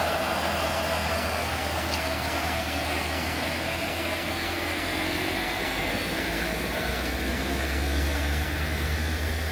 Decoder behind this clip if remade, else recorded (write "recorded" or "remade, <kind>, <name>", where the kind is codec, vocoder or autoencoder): remade, codec, SNAC